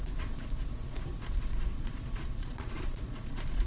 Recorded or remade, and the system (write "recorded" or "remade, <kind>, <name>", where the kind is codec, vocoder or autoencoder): remade, vocoder, Vocos